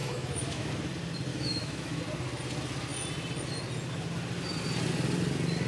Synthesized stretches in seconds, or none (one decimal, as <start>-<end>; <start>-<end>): 0.0-0.7; 1.3-2.0